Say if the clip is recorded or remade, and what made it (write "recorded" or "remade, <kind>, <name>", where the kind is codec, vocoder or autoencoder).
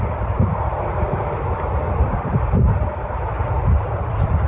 remade, vocoder, BigVGAN v2